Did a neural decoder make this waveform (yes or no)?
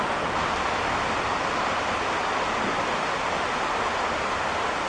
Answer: no